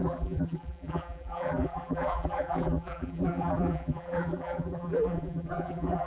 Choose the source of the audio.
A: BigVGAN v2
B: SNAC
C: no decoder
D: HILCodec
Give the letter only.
A